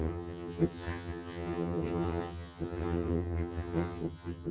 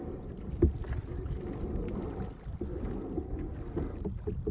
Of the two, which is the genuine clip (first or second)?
second